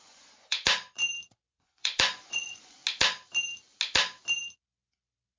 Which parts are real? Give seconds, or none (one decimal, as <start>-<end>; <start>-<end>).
1.0-1.5; 2.8-5.4

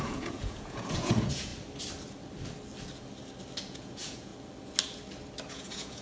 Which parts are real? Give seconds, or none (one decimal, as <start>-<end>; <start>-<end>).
1.5-3.6; 4.3-5.5

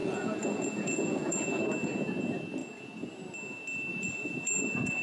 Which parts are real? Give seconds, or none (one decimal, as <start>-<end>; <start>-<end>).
1.6-2.6; 3.1-3.9

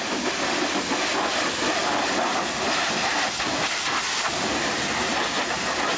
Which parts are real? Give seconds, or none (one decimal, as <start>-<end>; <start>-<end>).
0.0-6.0

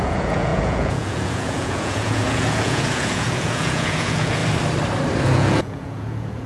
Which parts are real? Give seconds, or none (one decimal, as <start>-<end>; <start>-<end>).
4.4-5.2

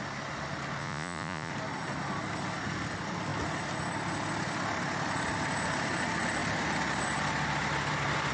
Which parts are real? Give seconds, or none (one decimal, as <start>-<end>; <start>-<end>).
0.0-0.8; 1.5-8.3

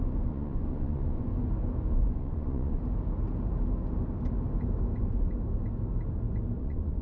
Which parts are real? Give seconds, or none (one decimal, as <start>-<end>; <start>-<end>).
1.3-1.9; 2.8-6.6

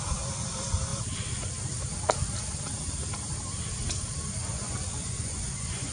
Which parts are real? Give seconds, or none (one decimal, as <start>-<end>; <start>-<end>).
0.0-4.4